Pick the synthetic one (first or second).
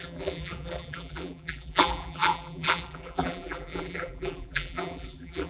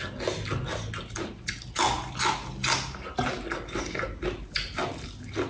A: first